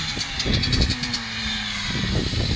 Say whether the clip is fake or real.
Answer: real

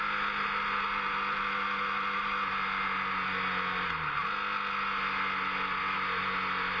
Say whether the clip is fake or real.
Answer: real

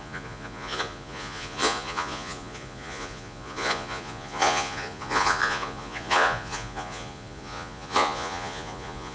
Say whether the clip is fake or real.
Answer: fake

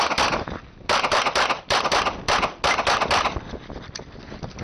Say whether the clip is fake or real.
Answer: real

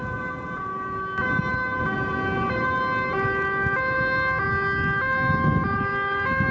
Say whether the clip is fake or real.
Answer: real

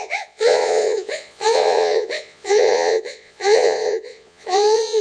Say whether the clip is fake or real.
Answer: fake